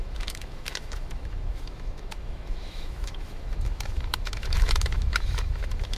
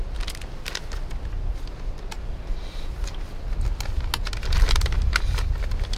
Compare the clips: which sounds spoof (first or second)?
first